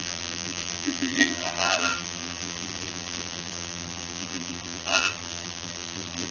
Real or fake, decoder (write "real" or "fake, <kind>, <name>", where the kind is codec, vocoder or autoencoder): fake, vocoder, BigVGAN v2